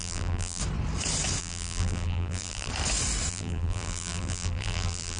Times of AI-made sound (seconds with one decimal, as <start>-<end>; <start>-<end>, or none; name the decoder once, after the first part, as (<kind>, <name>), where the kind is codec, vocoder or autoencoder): 0.0-0.6 (vocoder, BigVGAN v2); 1.4-2.7; 3.3-5.2